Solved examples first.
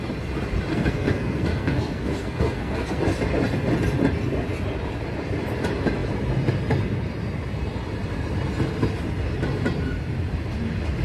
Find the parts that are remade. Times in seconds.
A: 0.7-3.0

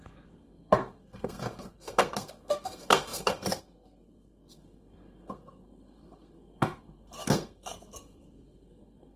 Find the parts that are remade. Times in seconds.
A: 0.0-9.2

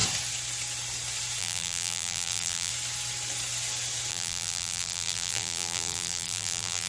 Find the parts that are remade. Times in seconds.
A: 1.4-2.7; 4.1-6.9

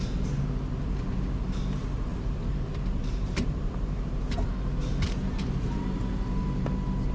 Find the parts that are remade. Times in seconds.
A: 2.1-4.1; 4.8-5.7

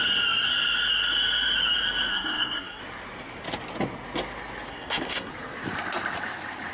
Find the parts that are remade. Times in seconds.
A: 2.1-2.8; 4.7-5.3